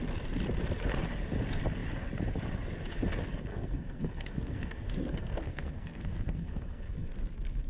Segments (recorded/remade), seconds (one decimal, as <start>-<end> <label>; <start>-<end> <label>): 0.0-3.5 recorded; 3.5-7.1 remade; 7.1-7.7 recorded